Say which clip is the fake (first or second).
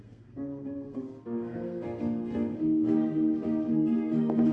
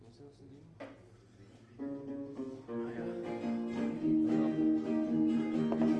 first